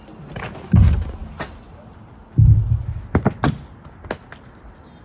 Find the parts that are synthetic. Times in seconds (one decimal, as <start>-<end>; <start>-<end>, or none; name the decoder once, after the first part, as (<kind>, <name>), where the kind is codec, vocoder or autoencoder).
none

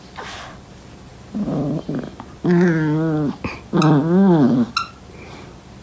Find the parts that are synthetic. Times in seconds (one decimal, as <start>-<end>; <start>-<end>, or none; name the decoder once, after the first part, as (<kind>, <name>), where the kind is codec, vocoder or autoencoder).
none

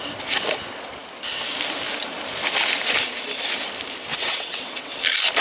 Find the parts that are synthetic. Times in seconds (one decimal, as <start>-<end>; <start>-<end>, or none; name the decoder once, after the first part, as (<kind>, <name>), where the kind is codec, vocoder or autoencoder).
4.1-4.9 (vocoder, WaveNeXt)

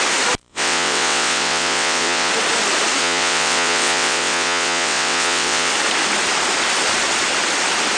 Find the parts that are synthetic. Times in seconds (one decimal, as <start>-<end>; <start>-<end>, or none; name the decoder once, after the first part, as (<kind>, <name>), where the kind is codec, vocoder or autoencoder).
0.5-2.3 (vocoder, WaveNeXt); 3.0-5.7

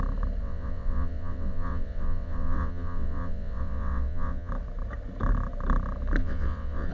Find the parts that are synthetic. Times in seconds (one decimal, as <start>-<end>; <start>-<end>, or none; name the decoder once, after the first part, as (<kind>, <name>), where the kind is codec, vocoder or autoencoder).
0.4-4.5 (vocoder, WaveNeXt); 6.2-6.9

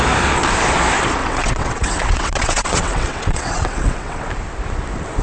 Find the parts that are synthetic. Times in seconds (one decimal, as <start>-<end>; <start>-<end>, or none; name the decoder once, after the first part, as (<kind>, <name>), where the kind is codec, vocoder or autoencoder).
1.2-4.3 (vocoder, WaveNeXt)

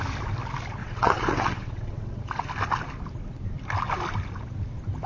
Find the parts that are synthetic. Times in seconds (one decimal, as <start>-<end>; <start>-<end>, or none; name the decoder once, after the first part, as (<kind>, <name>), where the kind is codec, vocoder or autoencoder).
0.8-2.2 (vocoder, WaveNeXt)